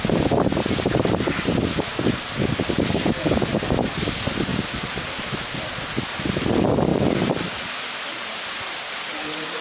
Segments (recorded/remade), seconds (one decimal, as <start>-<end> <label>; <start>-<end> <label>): 0.0-4.5 recorded; 4.5-5.2 remade; 5.2-6.9 recorded; 6.9-8.9 remade; 8.9-9.6 recorded